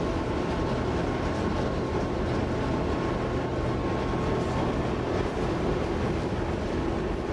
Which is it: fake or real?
real